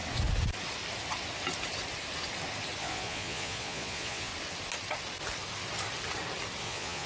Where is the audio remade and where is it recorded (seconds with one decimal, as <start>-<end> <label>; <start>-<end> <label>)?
0.0-2.8 recorded; 2.8-4.3 remade; 4.3-6.6 recorded; 6.6-7.1 remade